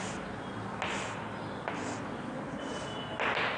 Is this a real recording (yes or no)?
yes